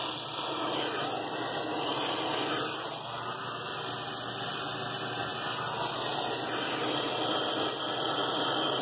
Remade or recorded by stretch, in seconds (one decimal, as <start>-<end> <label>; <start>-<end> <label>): 0.0-8.8 recorded